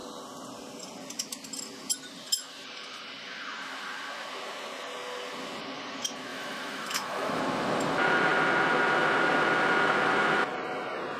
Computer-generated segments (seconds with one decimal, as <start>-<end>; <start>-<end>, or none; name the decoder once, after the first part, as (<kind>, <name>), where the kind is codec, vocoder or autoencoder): 6.3-7.4 (autoencoder, DAC-VAE)

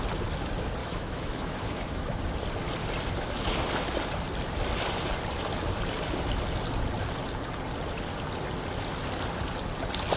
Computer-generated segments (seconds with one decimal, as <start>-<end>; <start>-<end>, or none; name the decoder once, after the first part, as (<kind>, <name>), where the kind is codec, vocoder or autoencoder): 0.8-2.2 (autoencoder, DAC-VAE)

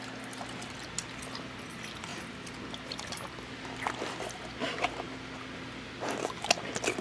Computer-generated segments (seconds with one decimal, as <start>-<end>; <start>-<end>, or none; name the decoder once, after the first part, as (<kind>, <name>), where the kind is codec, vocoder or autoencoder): none

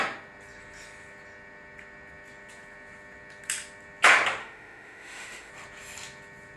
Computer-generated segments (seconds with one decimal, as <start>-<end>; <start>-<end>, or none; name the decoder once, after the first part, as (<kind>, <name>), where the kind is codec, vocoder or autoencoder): 4.4-5.5 (autoencoder, DAC-VAE)

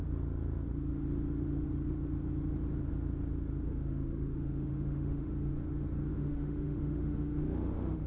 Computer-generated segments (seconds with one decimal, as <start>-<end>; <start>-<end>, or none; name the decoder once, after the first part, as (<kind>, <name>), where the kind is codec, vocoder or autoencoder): 3.7-5.3 (autoencoder, DAC-VAE); 6.1-8.1